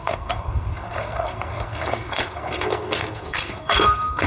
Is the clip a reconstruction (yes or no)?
yes